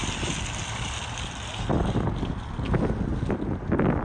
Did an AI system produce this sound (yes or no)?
no